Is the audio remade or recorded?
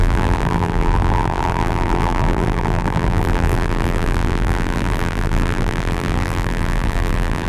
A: remade